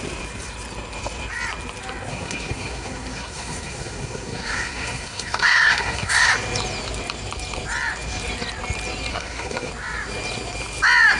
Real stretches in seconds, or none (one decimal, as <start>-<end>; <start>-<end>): 0.0-2.1; 6.3-9.1; 9.7-11.2